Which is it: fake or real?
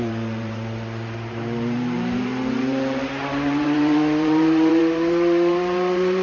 fake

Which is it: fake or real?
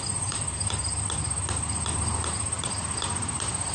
real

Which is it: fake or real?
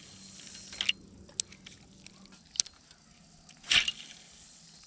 real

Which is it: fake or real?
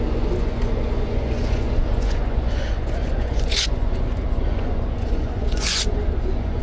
fake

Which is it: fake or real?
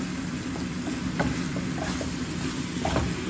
real